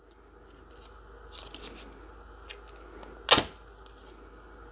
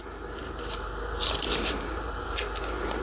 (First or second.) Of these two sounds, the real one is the first